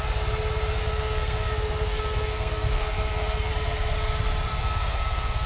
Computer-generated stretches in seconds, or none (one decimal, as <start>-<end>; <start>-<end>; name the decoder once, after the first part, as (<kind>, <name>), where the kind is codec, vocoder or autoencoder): 0.7-3.5 (codec, SNAC); 4.5-5.5